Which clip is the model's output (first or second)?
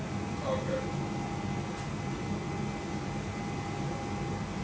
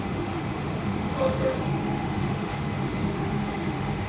second